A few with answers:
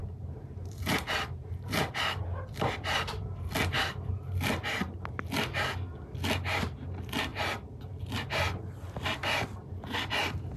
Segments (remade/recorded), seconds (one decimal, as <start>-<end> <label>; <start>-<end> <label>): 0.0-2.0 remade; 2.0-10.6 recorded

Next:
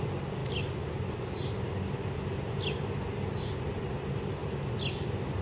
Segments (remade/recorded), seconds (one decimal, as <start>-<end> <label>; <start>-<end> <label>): 0.0-5.4 recorded

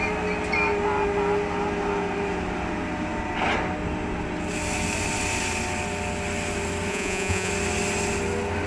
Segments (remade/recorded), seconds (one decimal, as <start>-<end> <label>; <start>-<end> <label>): 0.0-6.9 recorded; 6.9-7.5 remade; 7.5-8.7 recorded

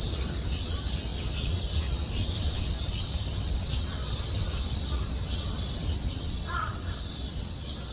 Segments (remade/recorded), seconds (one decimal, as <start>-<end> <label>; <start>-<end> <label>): 0.0-7.9 remade

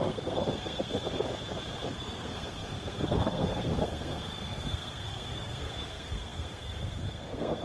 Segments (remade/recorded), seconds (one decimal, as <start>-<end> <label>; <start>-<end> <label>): 0.0-0.9 remade; 0.9-1.9 recorded; 1.9-7.6 remade

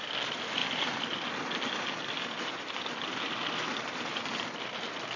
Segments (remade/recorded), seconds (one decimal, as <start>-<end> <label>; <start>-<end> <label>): 0.0-5.2 recorded

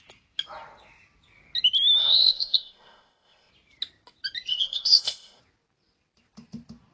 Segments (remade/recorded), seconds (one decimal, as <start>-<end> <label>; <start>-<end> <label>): 0.0-2.0 recorded; 2.0-3.5 remade; 3.5-4.5 recorded; 4.5-5.4 remade; 5.4-6.9 recorded

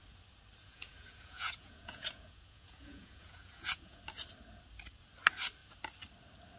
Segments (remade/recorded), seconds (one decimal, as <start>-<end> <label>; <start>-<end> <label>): 0.0-0.6 recorded; 0.6-4.0 remade; 4.0-6.6 recorded